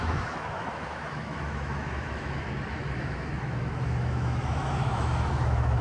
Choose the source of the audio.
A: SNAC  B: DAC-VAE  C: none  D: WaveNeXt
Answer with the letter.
B